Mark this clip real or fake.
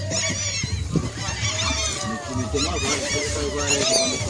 real